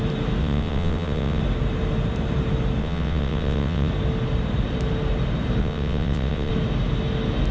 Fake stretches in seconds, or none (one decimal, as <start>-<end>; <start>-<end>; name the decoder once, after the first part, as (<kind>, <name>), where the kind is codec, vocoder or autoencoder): 0.4-1.4 (vocoder, WaveNeXt); 2.8-3.9; 5.6-6.5